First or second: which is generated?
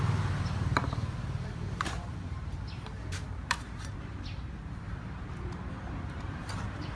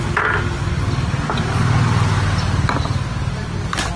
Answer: first